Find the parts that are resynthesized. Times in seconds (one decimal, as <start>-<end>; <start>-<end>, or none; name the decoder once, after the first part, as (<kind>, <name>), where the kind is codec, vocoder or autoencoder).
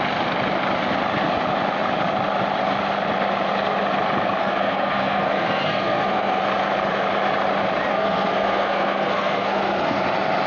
4.4-6.4 (codec, SNAC); 7.9-10.0